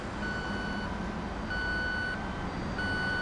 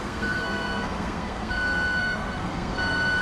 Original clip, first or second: first